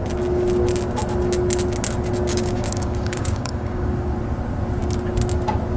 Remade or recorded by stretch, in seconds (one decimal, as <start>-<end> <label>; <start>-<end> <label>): 0.0-2.3 recorded; 2.3-3.9 remade; 3.9-5.8 recorded